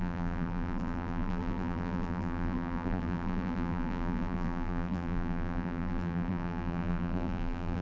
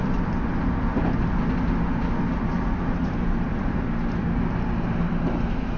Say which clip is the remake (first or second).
first